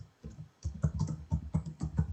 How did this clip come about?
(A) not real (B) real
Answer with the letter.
A